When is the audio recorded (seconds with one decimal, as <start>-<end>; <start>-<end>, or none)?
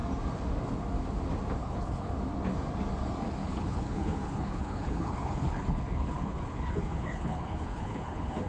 0.0-1.6; 2.2-3.4